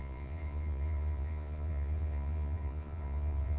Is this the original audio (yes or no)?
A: no